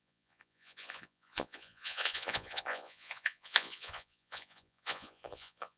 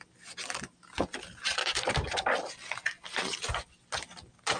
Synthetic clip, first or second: first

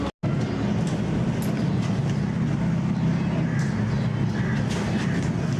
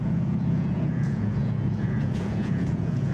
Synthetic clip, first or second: second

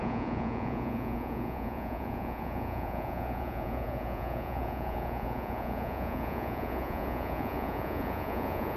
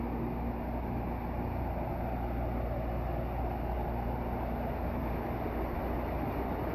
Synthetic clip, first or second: first